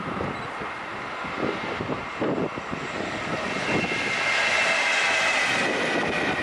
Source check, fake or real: real